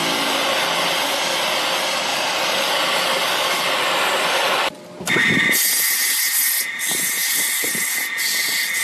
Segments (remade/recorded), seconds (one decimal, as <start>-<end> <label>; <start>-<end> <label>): 0.0-1.0 recorded; 1.0-1.5 remade; 1.5-2.1 recorded; 2.1-4.3 remade; 4.3-8.8 recorded